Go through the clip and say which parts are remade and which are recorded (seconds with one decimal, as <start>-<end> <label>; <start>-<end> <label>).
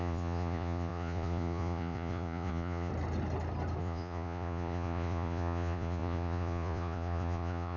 0.0-2.9 remade; 2.9-3.8 recorded; 3.8-7.8 remade